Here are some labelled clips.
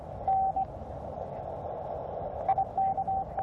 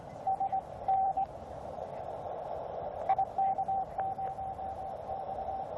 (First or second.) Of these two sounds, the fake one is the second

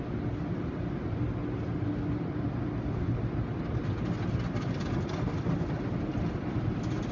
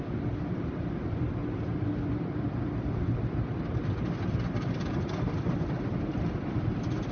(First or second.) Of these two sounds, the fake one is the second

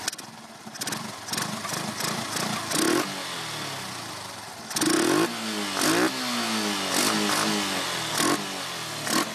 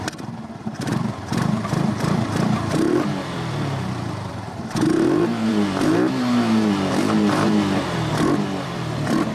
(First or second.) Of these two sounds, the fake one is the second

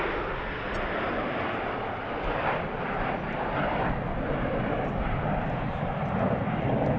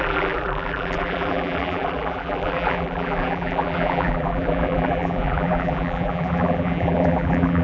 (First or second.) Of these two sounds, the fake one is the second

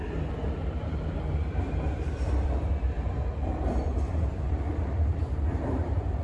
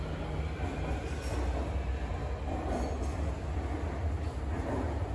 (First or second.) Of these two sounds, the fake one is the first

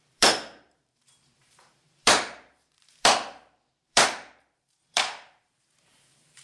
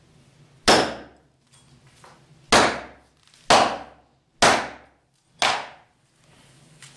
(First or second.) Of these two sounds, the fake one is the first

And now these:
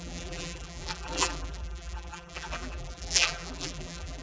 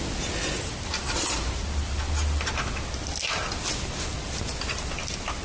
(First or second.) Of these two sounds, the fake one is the first